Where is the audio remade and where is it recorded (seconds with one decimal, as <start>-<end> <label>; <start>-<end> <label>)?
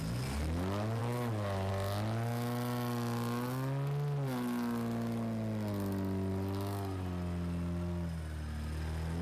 0.0-9.2 recorded